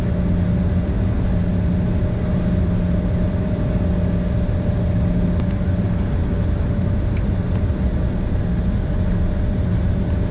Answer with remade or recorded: recorded